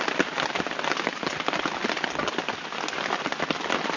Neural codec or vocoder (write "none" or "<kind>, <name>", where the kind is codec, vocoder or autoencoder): none